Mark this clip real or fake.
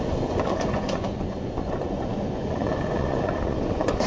fake